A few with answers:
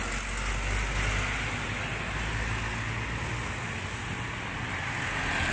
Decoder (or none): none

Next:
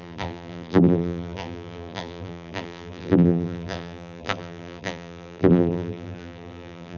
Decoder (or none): vocoder, BigVGAN v2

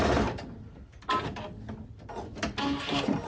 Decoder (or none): none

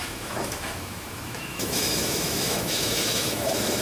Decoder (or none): autoencoder, DAC-VAE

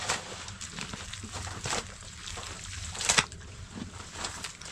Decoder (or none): vocoder, BigVGAN v2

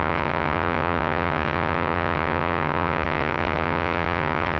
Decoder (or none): vocoder, HiFi-GAN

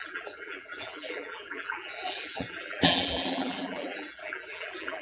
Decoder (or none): vocoder, BigVGAN v2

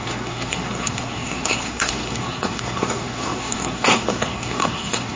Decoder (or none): codec, SNAC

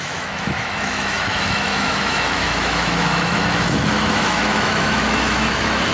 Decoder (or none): autoencoder, DAC-VAE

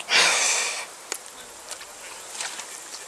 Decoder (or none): none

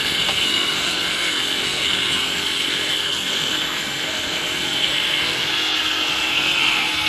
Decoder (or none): codec, SNAC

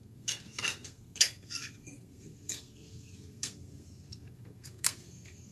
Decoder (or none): codec, SNAC